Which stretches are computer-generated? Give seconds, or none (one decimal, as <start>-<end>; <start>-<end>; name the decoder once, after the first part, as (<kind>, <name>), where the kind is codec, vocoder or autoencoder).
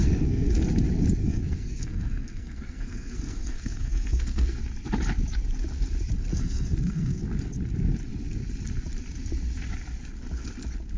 0.0-0.6 (codec, SNAC); 1.2-4.6; 6.3-7.2